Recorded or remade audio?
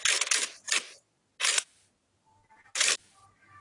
recorded